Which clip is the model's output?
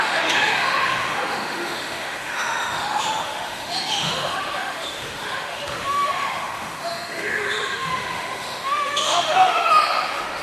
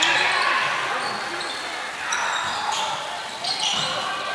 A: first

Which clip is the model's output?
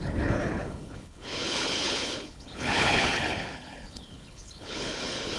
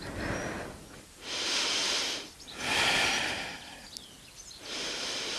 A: first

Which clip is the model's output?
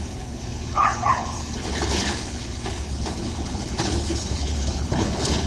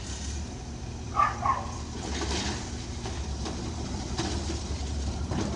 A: first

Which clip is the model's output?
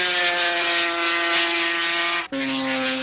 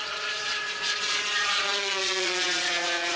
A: second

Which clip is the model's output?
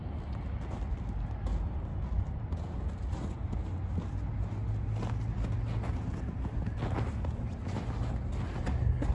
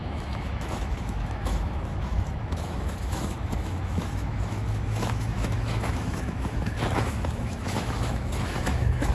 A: second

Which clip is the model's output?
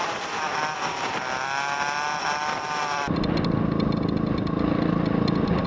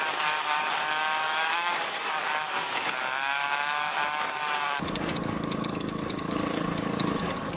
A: second